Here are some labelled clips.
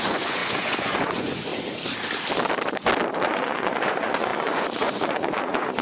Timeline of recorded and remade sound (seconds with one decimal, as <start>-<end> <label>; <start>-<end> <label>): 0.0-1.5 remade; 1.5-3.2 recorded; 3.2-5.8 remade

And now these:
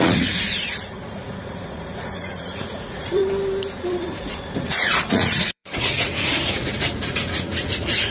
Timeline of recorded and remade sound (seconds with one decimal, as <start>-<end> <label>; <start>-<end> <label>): 0.0-3.2 remade; 3.2-4.1 recorded; 4.1-8.1 remade

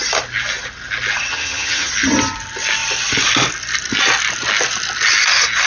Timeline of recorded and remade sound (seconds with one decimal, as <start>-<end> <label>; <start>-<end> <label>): 0.0-1.3 recorded; 1.3-1.9 remade; 1.9-5.7 recorded